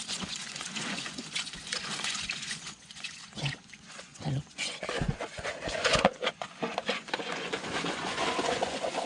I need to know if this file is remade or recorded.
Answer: remade